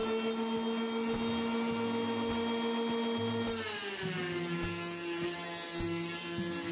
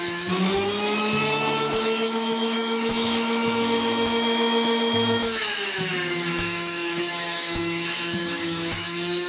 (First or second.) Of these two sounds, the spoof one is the second